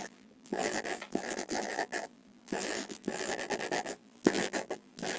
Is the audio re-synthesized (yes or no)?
yes